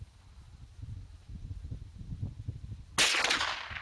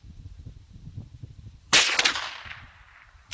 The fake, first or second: second